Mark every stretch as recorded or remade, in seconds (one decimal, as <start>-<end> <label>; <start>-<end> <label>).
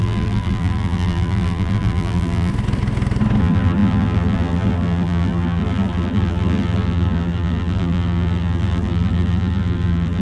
0.0-2.5 remade; 2.5-3.4 recorded; 3.4-10.2 remade